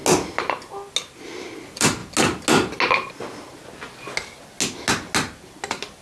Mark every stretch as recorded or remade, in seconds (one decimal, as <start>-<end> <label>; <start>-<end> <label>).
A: 0.0-6.0 recorded